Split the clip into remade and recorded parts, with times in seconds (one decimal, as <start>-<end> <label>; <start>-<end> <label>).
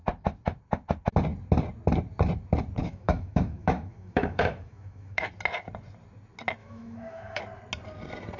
0.0-2.8 recorded; 2.8-5.3 remade; 5.3-6.6 recorded; 6.6-7.4 remade; 7.4-8.4 recorded